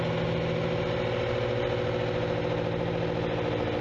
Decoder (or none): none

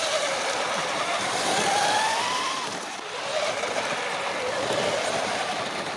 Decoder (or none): none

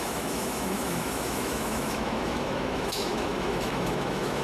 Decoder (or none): autoencoder, DAC-VAE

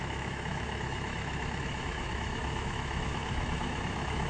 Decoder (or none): autoencoder, DAC-VAE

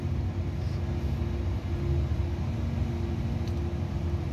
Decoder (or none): none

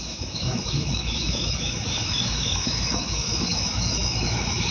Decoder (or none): autoencoder, DAC-VAE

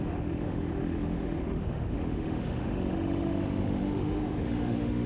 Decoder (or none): autoencoder, DAC-VAE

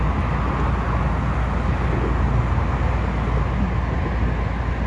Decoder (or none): none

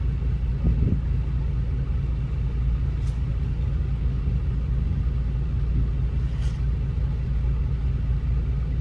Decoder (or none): none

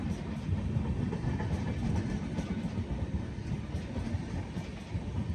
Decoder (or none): none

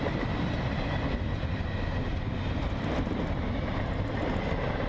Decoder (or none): none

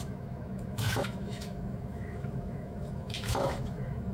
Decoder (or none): autoencoder, DAC-VAE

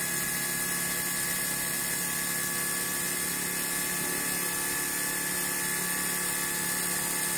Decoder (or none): none